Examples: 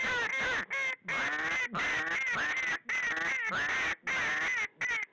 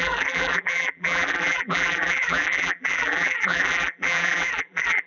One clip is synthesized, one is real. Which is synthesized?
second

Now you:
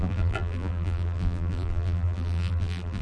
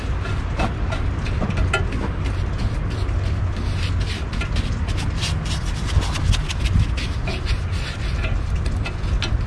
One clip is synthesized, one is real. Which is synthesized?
first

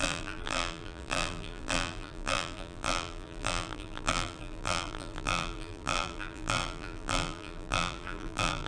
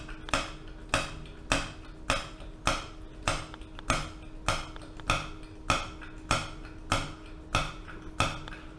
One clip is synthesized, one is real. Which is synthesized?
first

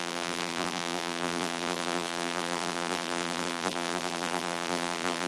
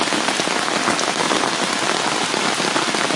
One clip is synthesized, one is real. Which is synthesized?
first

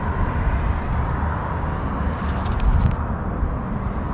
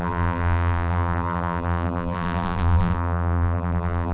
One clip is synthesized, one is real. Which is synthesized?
second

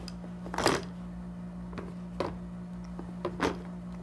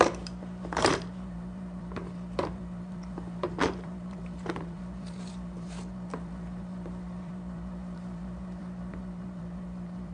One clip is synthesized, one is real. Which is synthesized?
second